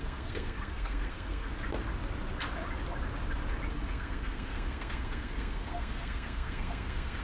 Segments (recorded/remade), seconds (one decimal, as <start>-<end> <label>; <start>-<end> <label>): 0.0-1.5 remade; 1.5-3.7 recorded; 3.7-7.2 remade